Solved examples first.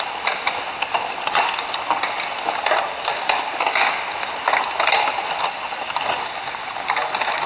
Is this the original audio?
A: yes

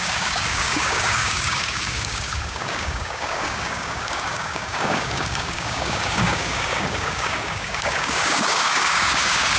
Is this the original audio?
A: no